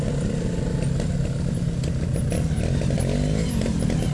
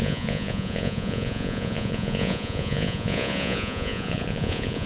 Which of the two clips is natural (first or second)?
first